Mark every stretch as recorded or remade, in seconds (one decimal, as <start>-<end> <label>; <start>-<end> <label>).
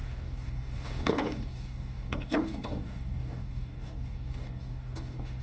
0.0-5.4 remade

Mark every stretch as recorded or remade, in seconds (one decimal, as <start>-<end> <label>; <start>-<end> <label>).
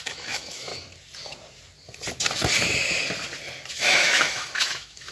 0.0-0.7 remade; 0.7-3.7 recorded; 3.7-5.1 remade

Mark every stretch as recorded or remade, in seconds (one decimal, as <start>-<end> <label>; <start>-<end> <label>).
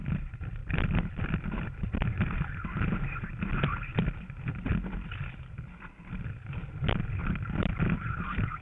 0.0-0.6 recorded; 0.6-2.8 remade; 2.8-4.5 recorded; 4.5-6.0 remade; 6.0-7.2 recorded; 7.2-8.6 remade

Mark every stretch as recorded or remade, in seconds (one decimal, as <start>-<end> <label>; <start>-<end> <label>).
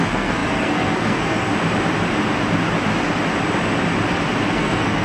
0.0-1.5 remade; 1.5-4.5 recorded; 4.5-5.0 remade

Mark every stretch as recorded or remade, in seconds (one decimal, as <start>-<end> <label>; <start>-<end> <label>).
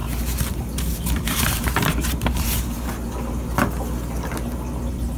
0.0-1.6 remade; 1.6-5.2 recorded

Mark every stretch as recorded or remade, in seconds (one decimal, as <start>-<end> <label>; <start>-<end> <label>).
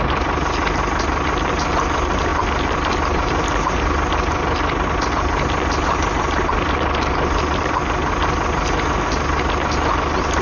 0.0-10.4 recorded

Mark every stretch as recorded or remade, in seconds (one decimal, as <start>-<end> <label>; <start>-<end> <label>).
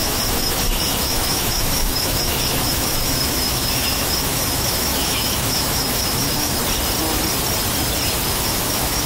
0.0-6.6 remade; 6.6-8.3 recorded; 8.3-9.1 remade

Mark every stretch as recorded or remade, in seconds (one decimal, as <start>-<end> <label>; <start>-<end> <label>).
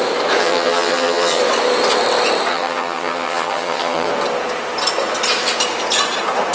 0.0-0.4 recorded; 0.4-1.4 remade; 1.4-2.5 recorded; 2.5-4.1 remade; 4.1-6.5 recorded